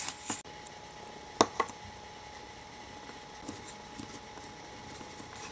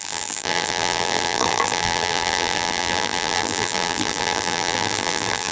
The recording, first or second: first